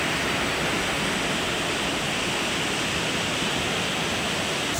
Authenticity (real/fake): real